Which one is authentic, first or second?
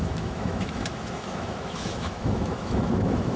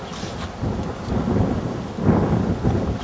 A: second